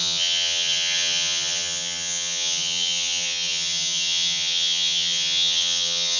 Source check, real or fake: fake